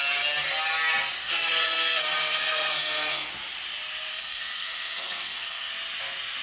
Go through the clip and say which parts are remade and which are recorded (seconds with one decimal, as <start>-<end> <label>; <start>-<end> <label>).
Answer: 0.0-1.2 recorded; 1.2-3.3 remade; 3.3-4.1 recorded; 4.1-5.7 remade; 5.7-6.4 recorded